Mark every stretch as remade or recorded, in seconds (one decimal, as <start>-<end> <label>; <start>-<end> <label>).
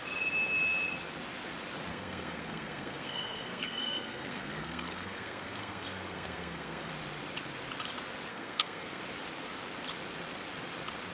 0.0-1.9 recorded; 1.9-6.9 remade; 6.9-8.3 recorded; 8.3-9.0 remade; 9.0-11.1 recorded